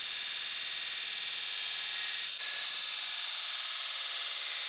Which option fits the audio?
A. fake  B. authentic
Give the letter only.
B